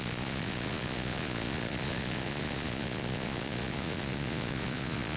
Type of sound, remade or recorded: remade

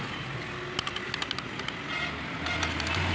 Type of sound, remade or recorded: recorded